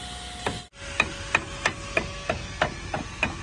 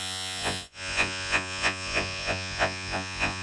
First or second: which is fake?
second